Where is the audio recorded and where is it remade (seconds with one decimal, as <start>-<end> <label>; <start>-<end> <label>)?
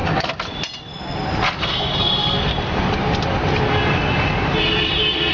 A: 0.0-1.6 recorded; 1.6-2.5 remade; 2.5-5.3 recorded